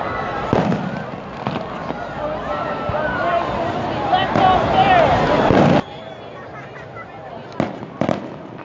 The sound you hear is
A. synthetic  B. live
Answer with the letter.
B